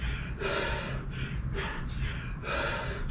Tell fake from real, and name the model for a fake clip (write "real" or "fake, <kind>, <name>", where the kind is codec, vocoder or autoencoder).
real